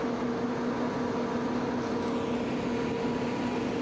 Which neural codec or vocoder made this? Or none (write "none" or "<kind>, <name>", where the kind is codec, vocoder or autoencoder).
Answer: none